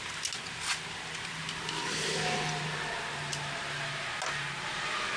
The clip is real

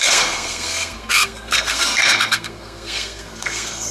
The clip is fake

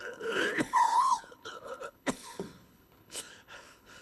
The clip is fake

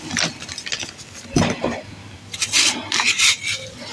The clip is real